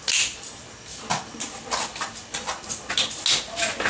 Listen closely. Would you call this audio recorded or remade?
recorded